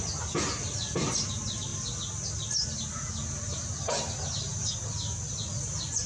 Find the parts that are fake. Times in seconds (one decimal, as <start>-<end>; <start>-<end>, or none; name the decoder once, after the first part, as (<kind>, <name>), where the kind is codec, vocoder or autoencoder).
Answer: none